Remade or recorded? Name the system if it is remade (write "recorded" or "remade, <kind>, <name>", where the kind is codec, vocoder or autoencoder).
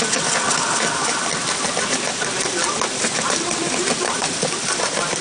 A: recorded